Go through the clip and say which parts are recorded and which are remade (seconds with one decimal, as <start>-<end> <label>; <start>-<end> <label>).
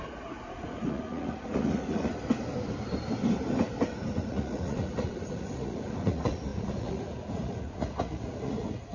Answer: 0.0-2.1 remade; 2.1-4.1 recorded; 4.1-8.9 remade